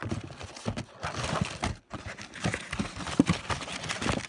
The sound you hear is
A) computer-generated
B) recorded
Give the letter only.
B